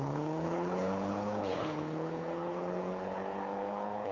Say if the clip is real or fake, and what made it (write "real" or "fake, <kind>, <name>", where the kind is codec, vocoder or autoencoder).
fake, codec, HILCodec